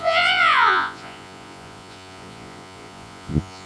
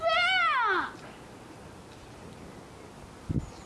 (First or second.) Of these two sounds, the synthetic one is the first